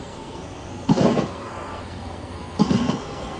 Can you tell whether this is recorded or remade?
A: remade